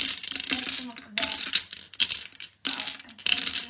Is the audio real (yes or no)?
yes